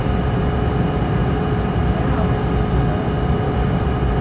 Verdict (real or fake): real